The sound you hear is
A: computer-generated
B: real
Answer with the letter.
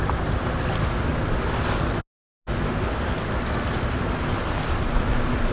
B